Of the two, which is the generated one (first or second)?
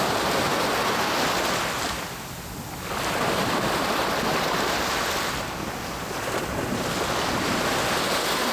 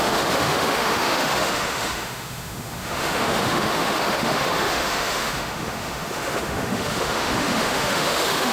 second